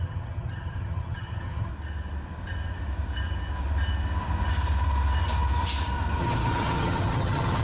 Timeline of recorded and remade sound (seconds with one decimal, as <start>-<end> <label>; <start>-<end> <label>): 0.0-1.7 remade; 1.7-6.2 recorded; 6.2-7.6 remade